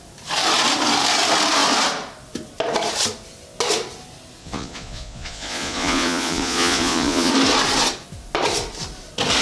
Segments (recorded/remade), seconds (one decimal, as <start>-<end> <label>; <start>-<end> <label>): 0.0-4.4 recorded; 4.4-7.3 remade; 7.3-9.4 recorded